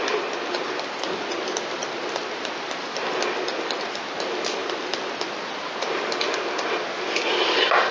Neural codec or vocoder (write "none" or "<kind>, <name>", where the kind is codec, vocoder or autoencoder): none